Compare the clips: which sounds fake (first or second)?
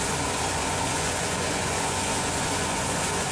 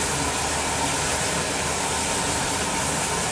first